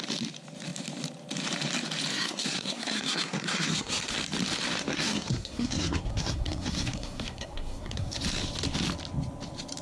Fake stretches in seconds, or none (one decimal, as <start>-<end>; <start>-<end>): 2.1-4.1; 4.9-8.2

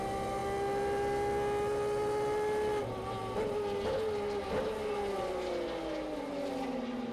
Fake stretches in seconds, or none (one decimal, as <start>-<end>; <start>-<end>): none

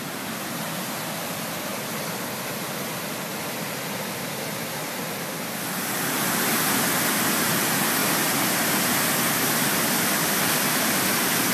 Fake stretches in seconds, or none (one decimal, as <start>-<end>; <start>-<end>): none

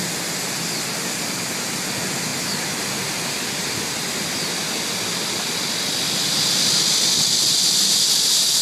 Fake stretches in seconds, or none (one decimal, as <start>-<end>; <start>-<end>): none

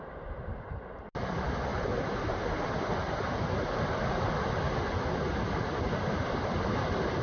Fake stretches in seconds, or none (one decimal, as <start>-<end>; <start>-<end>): none

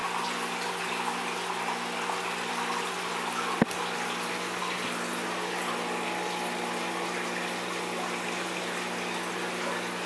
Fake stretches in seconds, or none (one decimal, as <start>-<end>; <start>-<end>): none